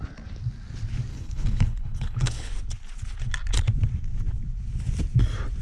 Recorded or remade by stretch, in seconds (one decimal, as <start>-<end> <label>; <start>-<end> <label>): 0.0-1.1 recorded; 1.1-2.5 remade; 2.5-5.6 recorded